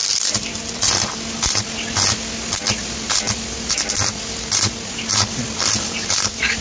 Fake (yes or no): no